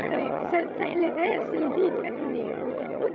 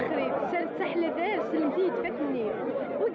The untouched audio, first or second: second